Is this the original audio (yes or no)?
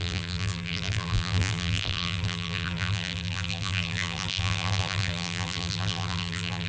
no